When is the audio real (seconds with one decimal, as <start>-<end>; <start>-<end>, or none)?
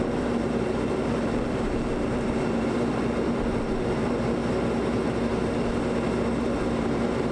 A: 4.4-6.8